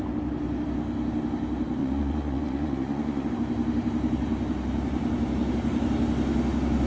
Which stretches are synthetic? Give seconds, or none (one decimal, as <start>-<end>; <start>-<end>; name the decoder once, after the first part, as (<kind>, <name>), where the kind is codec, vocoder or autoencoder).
1.8-3.3 (vocoder, Vocos)